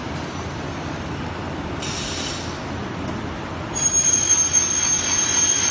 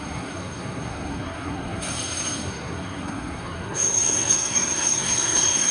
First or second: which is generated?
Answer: second